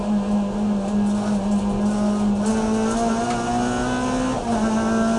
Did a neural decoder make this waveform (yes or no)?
no